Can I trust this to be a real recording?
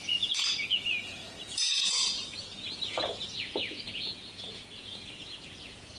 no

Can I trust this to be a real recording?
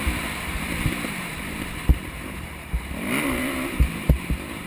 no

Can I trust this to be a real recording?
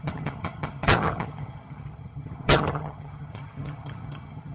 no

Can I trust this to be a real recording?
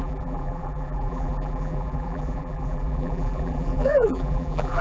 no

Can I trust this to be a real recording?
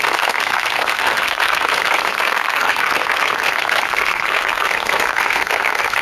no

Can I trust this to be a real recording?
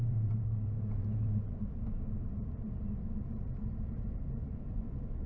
no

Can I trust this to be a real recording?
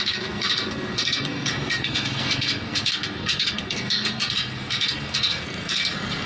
no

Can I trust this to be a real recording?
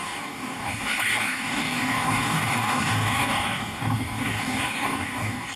no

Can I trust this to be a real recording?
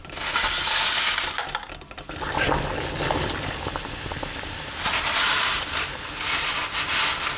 yes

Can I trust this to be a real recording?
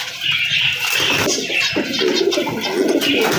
yes